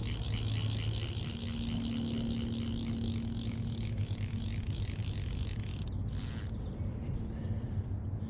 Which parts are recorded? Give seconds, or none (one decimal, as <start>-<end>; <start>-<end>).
0.0-5.0; 5.7-7.0